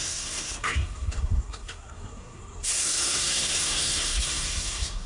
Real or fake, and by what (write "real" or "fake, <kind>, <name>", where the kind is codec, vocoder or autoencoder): fake, codec, SNAC